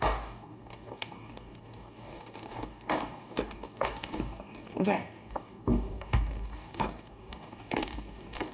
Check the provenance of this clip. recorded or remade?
remade